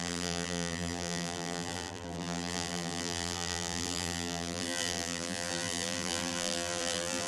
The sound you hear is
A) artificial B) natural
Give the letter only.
A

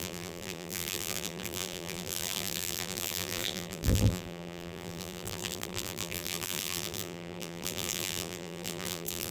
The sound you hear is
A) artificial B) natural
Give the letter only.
A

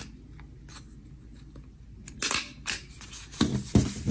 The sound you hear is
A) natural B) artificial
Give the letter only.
A